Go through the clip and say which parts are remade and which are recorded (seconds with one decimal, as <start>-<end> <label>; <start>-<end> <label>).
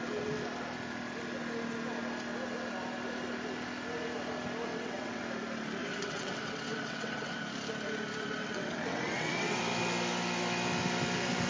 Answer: 0.0-4.7 recorded; 4.7-5.2 remade; 5.2-5.8 recorded; 5.8-7.4 remade; 7.4-8.4 recorded; 8.4-9.6 remade; 9.6-11.5 recorded